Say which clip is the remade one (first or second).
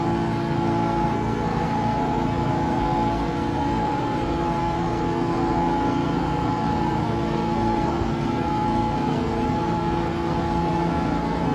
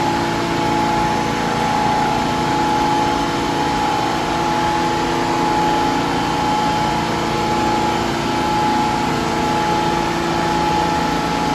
first